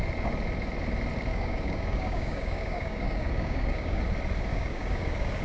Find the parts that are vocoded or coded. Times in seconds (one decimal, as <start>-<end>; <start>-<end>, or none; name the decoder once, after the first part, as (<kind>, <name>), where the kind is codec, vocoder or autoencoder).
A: 1.3-4.0 (codec, DAC); 4.5-5.4